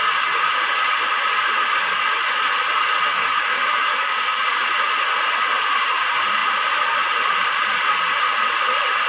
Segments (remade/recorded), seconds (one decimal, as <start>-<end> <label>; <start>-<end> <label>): 0.0-3.1 recorded; 3.1-4.5 remade; 4.5-9.1 recorded